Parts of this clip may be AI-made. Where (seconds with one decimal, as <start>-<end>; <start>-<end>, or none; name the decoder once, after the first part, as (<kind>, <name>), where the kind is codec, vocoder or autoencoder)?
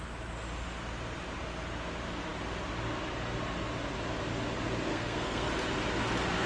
4.9-5.5 (codec, SNAC)